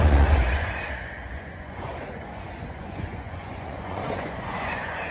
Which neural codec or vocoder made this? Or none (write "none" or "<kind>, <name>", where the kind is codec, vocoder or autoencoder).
vocoder, Vocos